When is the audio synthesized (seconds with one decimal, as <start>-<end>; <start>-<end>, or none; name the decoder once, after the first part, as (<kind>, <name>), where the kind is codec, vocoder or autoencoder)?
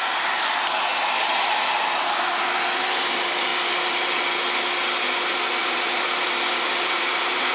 0.0-0.9 (vocoder, BigVGAN v2); 2.3-3.5; 5.6-7.5